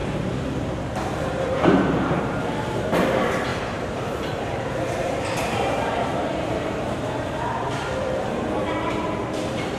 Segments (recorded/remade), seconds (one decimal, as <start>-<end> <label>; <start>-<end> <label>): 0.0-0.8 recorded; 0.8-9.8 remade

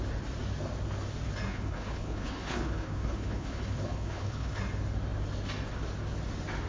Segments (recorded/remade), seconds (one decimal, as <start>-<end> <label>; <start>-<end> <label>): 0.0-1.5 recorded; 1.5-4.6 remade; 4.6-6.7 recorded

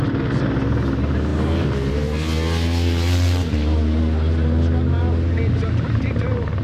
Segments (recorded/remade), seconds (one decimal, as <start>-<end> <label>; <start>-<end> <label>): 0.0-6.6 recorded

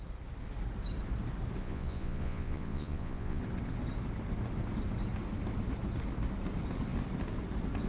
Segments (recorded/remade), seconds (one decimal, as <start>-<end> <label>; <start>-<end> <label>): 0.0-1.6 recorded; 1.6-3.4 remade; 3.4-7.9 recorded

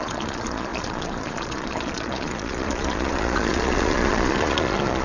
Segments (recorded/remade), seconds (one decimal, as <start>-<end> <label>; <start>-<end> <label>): 0.0-5.0 remade

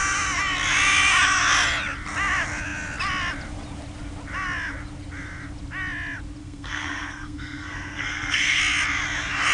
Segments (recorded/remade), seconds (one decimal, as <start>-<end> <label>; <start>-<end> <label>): 0.0-6.4 recorded; 6.4-8.6 remade; 8.6-9.5 recorded

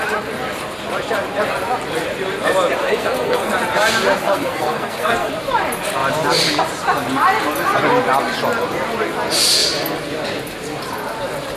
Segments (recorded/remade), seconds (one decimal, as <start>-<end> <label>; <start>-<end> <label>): 0.0-2.8 recorded; 2.8-3.5 remade; 3.5-4.2 recorded; 4.2-5.3 remade; 5.3-11.6 recorded

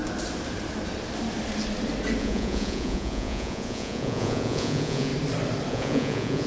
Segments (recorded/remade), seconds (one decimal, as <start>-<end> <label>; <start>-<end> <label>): 0.0-2.2 recorded; 2.2-5.1 remade; 5.1-5.7 recorded; 5.7-6.5 remade